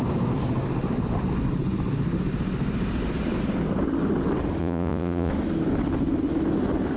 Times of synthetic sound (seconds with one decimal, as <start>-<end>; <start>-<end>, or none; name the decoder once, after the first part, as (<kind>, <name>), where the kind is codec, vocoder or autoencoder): 4.6-5.3 (vocoder, Vocos)